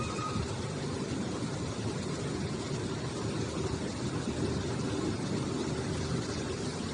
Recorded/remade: recorded